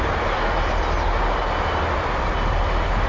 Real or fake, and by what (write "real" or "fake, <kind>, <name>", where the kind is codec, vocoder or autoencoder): real